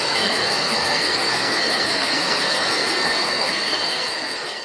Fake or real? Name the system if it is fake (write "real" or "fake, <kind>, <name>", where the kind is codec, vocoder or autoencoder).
fake, codec, SNAC